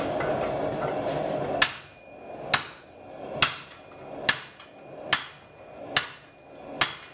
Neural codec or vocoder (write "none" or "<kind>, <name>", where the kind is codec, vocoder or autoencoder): none